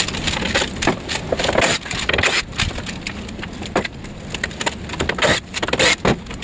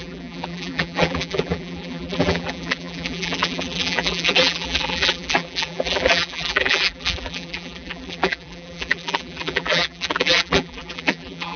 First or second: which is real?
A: first